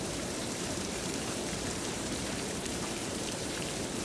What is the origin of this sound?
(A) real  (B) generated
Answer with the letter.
B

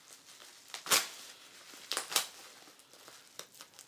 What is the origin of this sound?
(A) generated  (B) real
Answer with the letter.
B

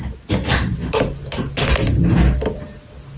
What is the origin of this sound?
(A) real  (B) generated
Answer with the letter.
A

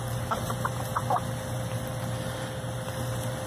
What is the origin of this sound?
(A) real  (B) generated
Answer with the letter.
B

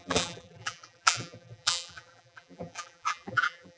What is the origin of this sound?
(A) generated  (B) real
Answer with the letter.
A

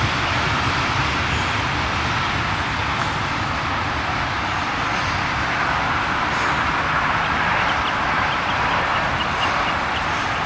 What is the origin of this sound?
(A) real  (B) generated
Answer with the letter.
B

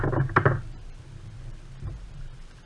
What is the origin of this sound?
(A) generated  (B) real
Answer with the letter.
B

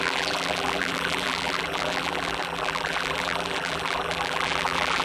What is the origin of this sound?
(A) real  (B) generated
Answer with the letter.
B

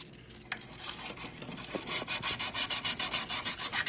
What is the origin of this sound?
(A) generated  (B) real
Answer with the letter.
B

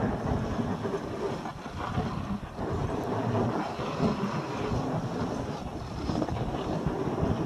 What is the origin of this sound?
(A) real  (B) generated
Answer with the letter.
A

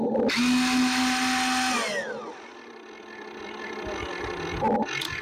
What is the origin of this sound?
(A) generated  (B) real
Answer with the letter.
B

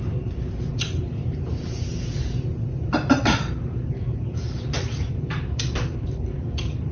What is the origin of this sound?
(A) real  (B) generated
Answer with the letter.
B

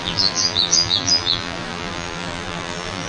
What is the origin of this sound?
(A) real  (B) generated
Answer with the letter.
B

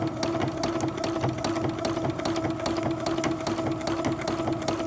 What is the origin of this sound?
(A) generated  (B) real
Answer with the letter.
B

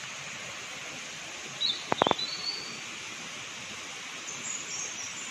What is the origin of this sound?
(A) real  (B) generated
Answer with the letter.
A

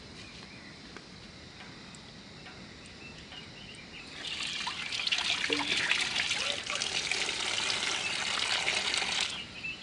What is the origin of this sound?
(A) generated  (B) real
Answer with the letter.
B